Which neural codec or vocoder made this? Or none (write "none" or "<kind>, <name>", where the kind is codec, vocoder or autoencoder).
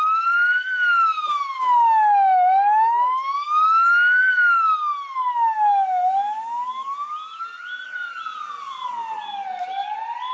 none